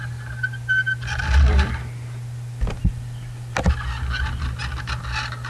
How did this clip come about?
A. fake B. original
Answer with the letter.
B